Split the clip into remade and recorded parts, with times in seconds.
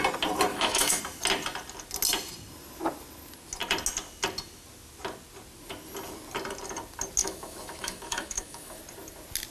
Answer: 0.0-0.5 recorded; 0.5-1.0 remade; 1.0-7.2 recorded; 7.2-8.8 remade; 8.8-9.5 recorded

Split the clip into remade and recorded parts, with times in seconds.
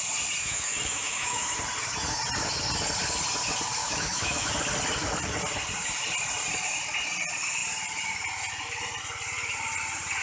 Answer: 0.0-0.4 recorded; 0.4-1.6 remade; 1.6-3.8 recorded; 3.8-4.6 remade; 4.6-10.2 recorded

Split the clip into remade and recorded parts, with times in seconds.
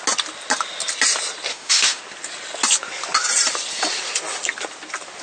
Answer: 0.0-1.5 recorded; 1.5-2.0 remade; 2.0-5.2 recorded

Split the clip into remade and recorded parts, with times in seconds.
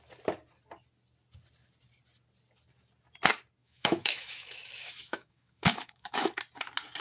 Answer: 0.0-3.6 recorded; 3.6-6.4 remade; 6.4-7.0 recorded